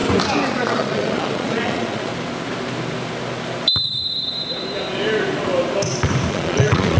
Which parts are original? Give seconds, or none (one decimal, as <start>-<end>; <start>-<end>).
0.0-0.5; 2.1-6.3